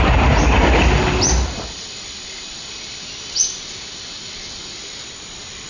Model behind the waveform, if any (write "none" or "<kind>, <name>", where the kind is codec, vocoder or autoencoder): none